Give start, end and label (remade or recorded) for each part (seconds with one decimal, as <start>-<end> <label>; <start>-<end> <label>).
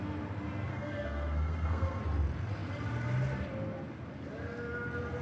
0.0-0.7 recorded; 0.7-2.0 remade; 2.0-5.2 recorded